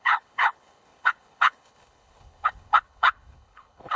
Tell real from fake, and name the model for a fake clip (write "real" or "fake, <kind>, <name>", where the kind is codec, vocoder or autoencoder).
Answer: fake, codec, HILCodec